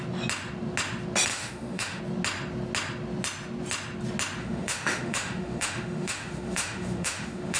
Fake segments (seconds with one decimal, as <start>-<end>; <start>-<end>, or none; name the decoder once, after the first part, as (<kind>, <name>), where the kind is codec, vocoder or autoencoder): 1.3-2.0 (autoencoder, DAC-VAE); 4.4-7.6